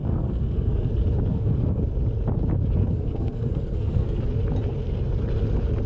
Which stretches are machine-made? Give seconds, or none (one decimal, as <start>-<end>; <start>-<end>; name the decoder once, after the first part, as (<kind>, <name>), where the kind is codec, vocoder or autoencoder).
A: 0.0-0.9 (codec, SNAC); 1.3-1.8; 2.8-4.2